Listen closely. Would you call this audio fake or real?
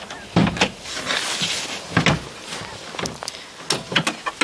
real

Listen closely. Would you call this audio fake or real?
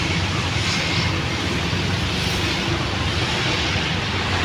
real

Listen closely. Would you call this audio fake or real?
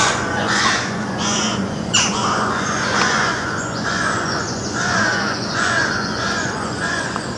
fake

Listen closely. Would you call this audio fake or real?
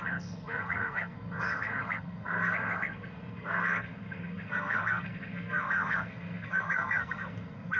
fake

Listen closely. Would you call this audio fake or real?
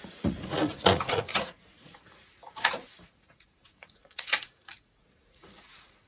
fake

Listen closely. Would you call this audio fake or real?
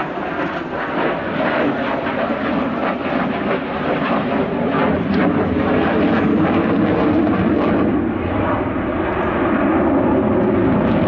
real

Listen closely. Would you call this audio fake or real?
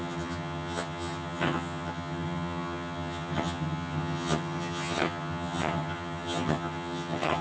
fake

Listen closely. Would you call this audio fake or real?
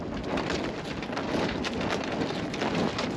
real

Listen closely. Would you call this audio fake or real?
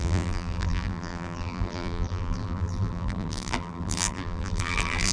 fake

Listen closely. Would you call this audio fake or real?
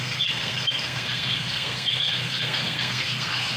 fake